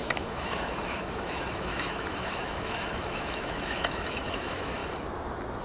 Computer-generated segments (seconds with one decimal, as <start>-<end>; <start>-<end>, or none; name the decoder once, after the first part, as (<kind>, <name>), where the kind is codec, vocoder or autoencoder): 0.0-4.8 (autoencoder, DAC-VAE)